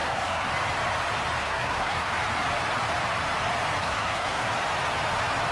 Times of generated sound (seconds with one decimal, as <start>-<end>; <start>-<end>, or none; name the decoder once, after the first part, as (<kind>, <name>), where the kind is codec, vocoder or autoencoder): 0.0-0.5 (codec, SNAC); 1.4-2.1; 3.8-4.5